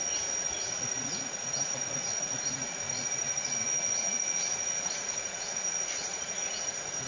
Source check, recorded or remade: remade